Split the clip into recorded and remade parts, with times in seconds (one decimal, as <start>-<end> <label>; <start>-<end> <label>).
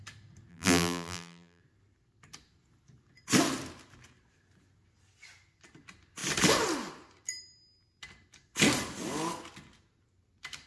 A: 0.0-0.5 recorded; 0.5-1.6 remade; 1.6-10.7 recorded